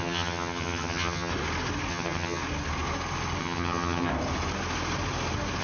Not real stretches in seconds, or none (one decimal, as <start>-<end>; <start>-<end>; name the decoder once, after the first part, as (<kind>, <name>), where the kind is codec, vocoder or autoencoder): 0.0-1.3 (vocoder, HiFi-GAN); 1.9-2.4; 3.4-4.1